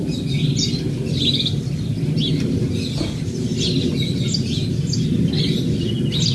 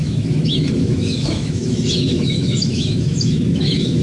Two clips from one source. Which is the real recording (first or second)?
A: first